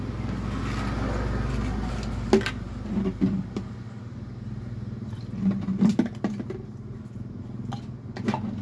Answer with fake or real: real